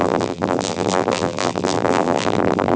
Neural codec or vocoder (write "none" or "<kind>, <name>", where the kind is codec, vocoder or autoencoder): vocoder, BigVGAN v2